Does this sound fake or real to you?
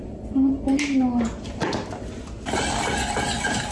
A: real